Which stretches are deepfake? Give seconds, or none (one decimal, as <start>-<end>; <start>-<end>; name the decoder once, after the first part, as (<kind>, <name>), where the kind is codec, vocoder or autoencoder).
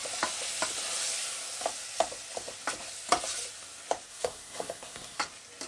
4.1-5.2 (codec, SNAC)